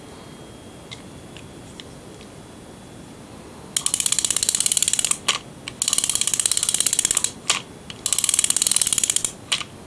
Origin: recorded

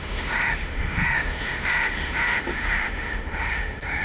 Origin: remade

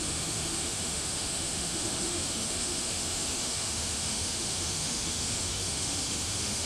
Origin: remade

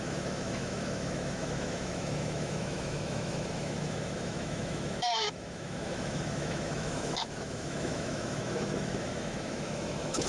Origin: remade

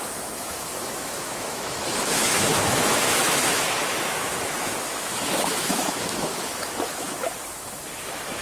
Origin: remade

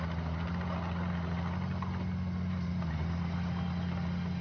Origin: recorded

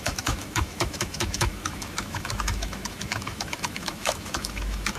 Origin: remade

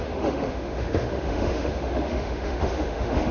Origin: remade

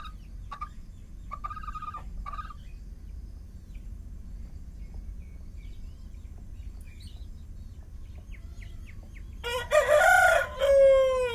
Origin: recorded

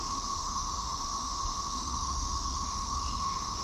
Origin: remade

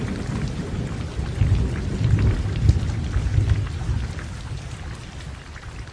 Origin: recorded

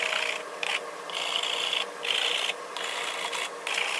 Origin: recorded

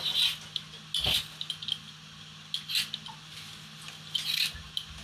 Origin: recorded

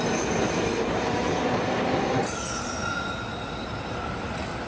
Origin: recorded